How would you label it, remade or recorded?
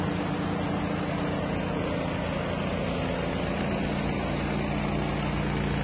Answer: recorded